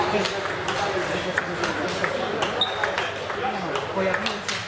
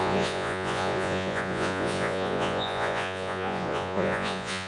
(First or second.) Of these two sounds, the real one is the first